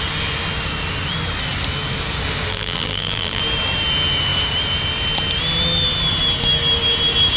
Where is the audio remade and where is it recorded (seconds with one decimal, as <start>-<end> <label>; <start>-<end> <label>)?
0.0-2.5 recorded; 2.5-3.4 remade; 3.4-7.4 recorded